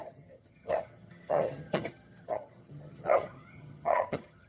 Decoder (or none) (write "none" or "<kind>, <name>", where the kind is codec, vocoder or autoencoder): vocoder, HiFi-GAN